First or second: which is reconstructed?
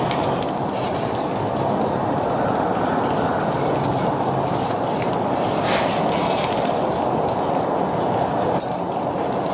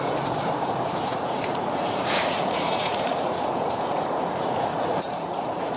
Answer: second